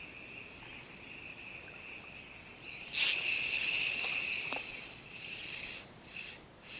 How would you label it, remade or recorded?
recorded